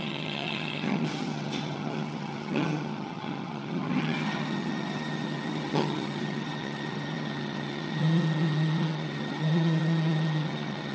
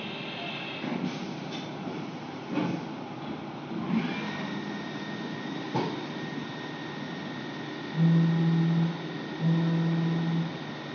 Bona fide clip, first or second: second